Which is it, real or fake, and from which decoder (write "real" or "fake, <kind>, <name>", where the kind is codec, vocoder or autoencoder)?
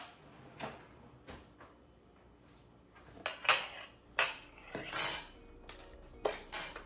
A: real